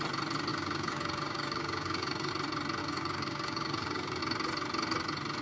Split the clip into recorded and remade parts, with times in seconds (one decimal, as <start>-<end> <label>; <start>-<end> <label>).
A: 0.0-0.5 recorded; 0.5-2.3 remade; 2.3-2.8 recorded; 2.8-4.2 remade; 4.2-5.4 recorded